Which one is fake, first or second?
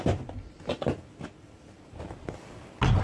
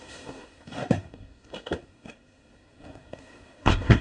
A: second